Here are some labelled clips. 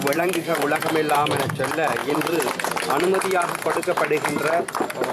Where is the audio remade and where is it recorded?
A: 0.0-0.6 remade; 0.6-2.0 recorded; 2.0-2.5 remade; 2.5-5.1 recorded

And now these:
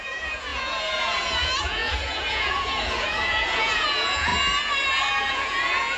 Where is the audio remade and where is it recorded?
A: 0.0-4.3 remade; 4.3-5.2 recorded; 5.2-6.0 remade

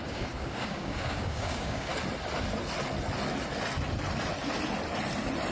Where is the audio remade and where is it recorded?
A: 0.0-1.9 remade; 1.9-5.5 recorded

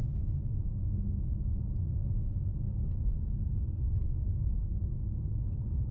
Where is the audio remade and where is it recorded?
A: 0.0-2.8 recorded; 2.8-3.9 remade; 3.9-4.7 recorded; 4.7-5.2 remade; 5.2-5.9 recorded

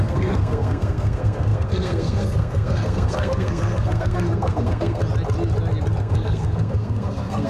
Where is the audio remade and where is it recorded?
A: 0.0-5.0 remade; 5.0-6.0 recorded; 6.0-7.5 remade

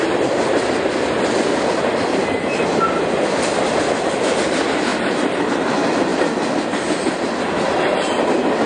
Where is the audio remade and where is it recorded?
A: 0.0-6.1 recorded; 6.1-7.2 remade; 7.2-8.7 recorded